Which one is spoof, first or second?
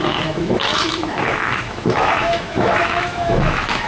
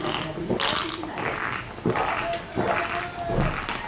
first